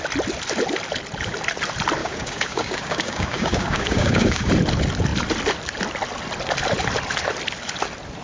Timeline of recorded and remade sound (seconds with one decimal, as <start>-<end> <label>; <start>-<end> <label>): 0.0-2.0 recorded; 2.0-4.5 remade; 4.5-8.2 recorded